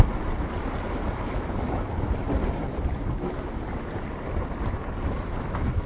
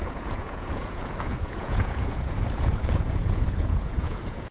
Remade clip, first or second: second